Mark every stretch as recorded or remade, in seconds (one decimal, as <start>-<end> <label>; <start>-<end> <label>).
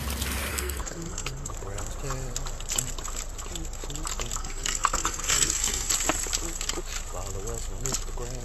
0.0-0.5 recorded; 0.5-1.5 remade; 1.5-4.4 recorded; 4.4-5.9 remade; 5.9-8.4 recorded